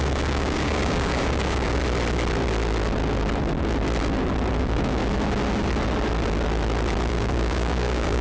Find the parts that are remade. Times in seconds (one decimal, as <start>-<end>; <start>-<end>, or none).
0.0-1.8; 4.6-5.0; 7.1-8.2